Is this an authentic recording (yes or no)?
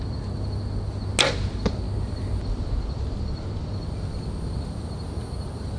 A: yes